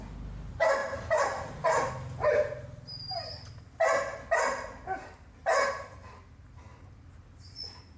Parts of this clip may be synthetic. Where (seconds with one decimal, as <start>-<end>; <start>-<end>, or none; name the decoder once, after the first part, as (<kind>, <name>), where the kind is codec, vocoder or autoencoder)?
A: 0.8-1.9 (vocoder, BigVGAN v2)